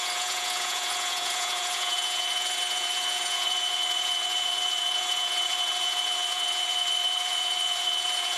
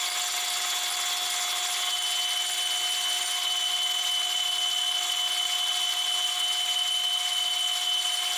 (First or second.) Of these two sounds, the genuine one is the second